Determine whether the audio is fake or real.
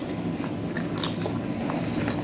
real